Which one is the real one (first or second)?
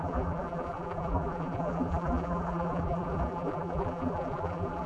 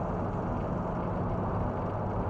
second